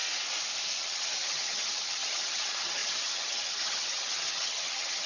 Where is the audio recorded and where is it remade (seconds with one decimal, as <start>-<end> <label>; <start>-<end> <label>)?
0.0-0.8 recorded; 0.8-5.1 remade